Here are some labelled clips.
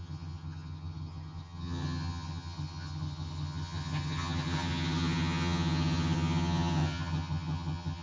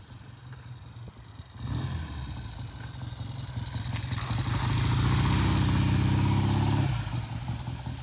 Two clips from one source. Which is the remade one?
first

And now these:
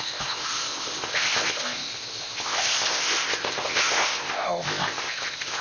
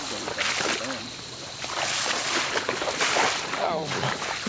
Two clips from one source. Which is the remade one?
first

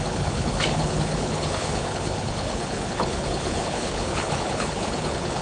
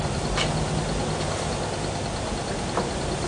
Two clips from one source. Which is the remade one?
first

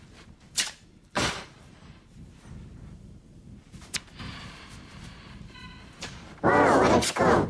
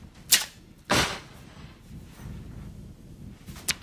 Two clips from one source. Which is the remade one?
first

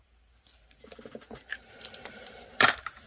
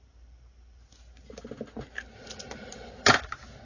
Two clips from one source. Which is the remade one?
first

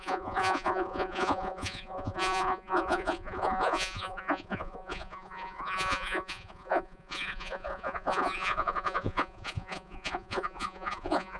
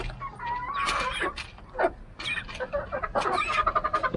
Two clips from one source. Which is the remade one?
first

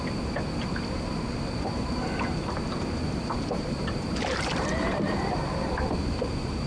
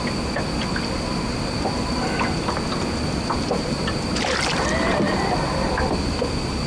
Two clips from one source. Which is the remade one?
first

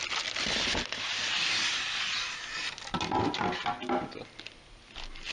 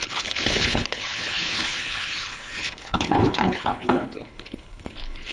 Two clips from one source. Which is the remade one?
second